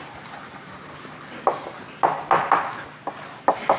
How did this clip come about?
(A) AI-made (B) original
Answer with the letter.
B